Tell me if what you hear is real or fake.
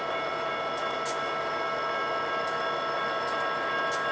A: real